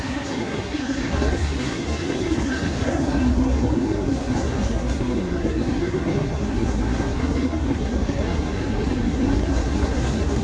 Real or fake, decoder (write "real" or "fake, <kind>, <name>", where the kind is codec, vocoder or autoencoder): fake, codec, SNAC